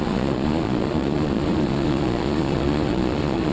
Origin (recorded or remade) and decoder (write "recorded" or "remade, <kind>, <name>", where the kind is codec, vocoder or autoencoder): remade, vocoder, Vocos